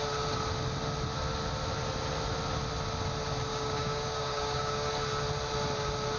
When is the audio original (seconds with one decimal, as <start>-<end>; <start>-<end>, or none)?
0.0-3.5; 4.9-6.2